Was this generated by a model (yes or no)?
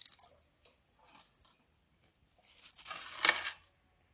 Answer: no